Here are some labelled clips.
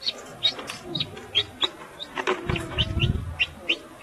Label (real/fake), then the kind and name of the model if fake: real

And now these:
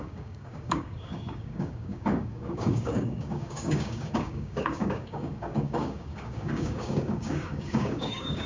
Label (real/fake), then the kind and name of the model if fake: fake, codec, DAC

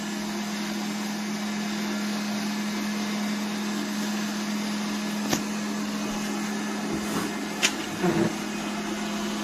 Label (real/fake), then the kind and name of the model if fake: real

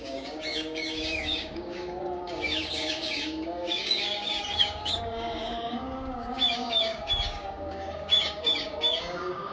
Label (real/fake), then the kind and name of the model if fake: fake, codec, DAC